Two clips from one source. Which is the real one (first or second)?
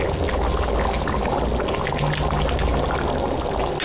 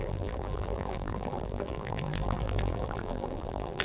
first